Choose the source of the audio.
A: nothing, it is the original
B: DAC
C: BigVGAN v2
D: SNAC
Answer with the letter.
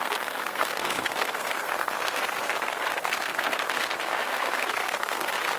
D